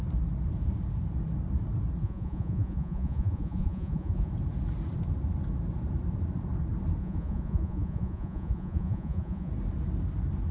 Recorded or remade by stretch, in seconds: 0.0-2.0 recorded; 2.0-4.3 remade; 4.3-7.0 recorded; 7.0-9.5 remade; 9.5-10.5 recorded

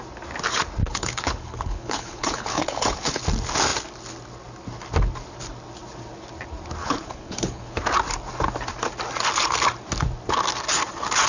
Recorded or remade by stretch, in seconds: 0.0-0.8 recorded; 0.8-3.2 remade; 3.2-6.8 recorded; 6.8-7.8 remade; 7.8-11.3 recorded

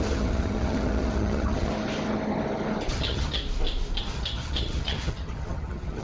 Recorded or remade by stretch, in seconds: 0.0-1.7 remade; 1.7-2.9 recorded; 2.9-3.4 remade; 3.4-4.0 recorded; 4.0-6.0 remade

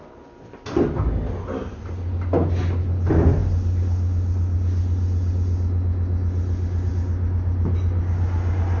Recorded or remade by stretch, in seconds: 0.0-8.8 recorded

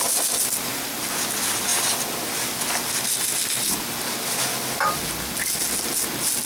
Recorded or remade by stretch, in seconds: 0.0-6.5 recorded